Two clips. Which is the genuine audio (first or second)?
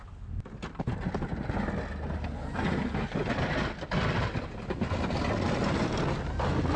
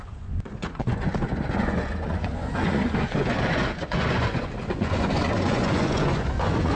first